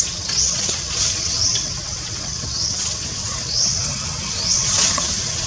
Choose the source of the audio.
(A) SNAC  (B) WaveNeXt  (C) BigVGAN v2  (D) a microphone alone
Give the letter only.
B